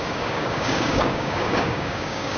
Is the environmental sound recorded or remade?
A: remade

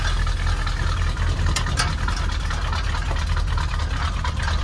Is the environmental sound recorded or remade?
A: recorded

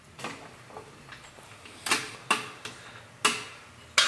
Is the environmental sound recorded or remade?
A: recorded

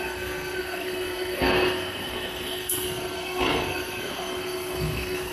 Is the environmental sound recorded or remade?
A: remade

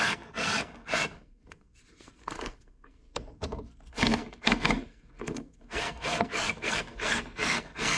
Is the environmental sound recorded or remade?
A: remade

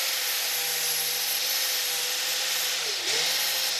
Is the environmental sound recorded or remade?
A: recorded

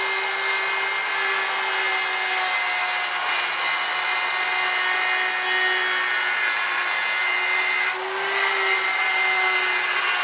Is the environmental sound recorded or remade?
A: recorded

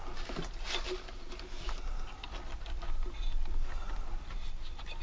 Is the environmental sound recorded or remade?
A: recorded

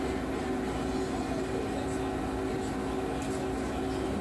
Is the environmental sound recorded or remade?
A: recorded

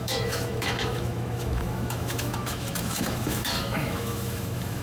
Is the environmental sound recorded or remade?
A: remade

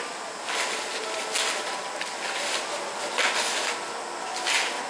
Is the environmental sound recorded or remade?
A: recorded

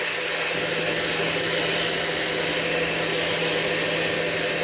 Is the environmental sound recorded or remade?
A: recorded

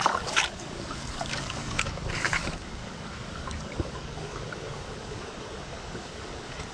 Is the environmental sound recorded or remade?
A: remade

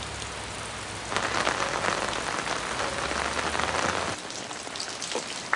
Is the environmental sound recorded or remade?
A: recorded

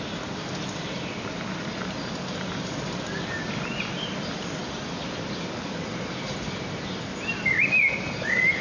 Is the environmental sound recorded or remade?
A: recorded